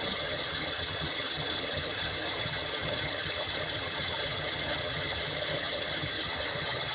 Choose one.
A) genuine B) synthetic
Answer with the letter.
B